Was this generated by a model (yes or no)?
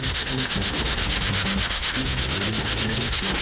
yes